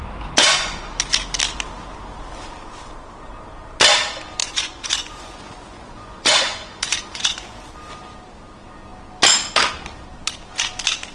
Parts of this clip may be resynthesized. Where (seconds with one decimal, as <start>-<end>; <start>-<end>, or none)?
0.4-1.0; 4.4-7.7